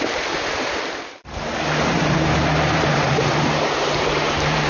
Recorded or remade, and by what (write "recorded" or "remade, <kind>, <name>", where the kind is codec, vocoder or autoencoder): remade, vocoder, BigVGAN v2